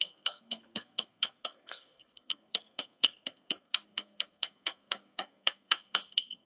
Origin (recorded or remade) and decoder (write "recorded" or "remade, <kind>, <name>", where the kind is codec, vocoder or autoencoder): remade, codec, SNAC